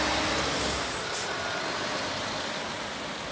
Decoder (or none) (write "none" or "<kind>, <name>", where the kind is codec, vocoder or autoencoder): none